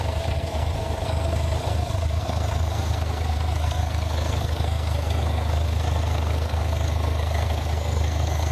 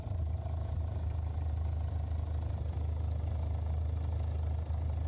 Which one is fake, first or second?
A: first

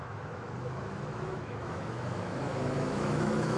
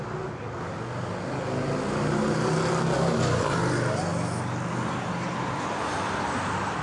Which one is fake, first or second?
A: first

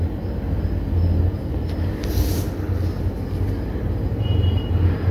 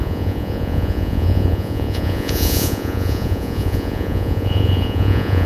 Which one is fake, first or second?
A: second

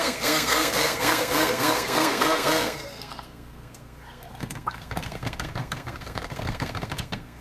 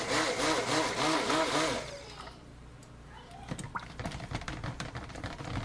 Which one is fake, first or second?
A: first